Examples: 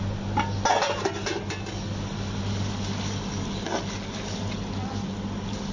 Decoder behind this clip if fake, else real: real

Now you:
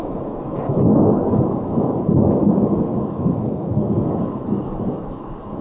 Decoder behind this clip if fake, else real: fake, codec, DAC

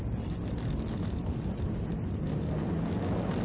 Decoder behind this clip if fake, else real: real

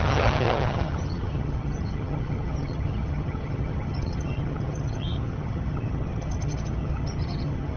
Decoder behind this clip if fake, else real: fake, vocoder, HiFi-GAN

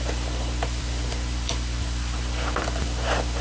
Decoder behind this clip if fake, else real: real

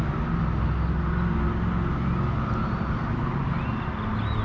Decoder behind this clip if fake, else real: real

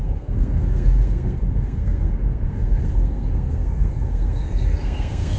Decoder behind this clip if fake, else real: fake, codec, SNAC